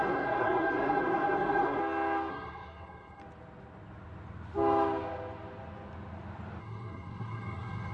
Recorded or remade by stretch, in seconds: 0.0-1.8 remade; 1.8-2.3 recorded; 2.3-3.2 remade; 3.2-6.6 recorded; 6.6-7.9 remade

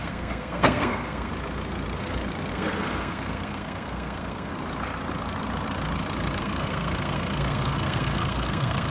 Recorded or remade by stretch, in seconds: 0.0-1.3 remade; 1.3-2.5 recorded; 2.5-4.5 remade; 4.5-6.4 recorded; 6.4-8.9 remade

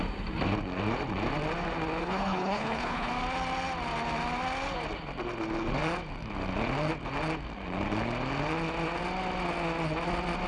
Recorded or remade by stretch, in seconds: 0.0-2.0 recorded; 2.0-3.1 remade; 3.1-10.5 recorded

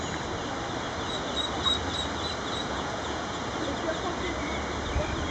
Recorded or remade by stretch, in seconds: 0.0-2.6 recorded; 2.6-3.4 remade; 3.4-5.3 recorded

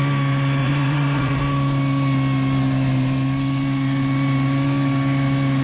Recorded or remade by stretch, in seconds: 0.0-0.6 recorded; 0.6-1.4 remade; 1.4-5.6 recorded

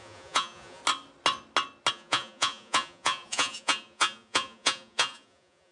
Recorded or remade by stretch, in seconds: 0.0-0.8 remade; 0.8-1.9 recorded; 1.9-5.7 remade